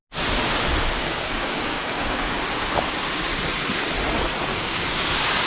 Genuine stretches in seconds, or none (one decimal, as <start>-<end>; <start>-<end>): 0.0-1.0; 2.4-4.5